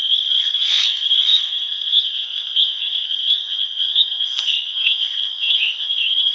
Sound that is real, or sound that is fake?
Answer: fake